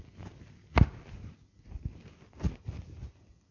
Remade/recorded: recorded